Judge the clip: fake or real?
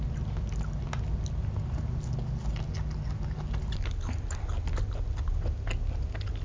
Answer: real